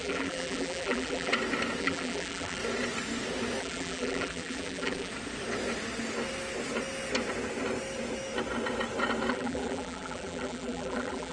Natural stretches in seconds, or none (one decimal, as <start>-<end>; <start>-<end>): 1.3-1.8; 2.6-3.6; 5.1-9.3